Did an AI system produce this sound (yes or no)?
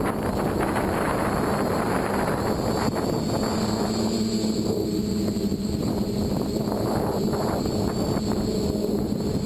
no